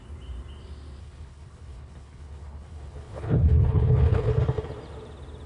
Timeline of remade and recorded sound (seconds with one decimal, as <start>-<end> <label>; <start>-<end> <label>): 0.0-1.0 recorded; 1.0-4.3 remade; 4.3-5.5 recorded